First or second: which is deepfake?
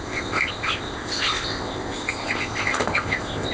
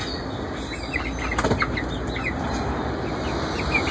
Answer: first